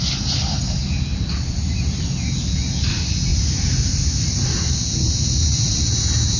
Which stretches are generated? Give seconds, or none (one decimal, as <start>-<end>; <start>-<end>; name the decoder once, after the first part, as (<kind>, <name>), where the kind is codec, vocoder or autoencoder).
1.1-2.0 (vocoder, BigVGAN v2); 3.3-6.4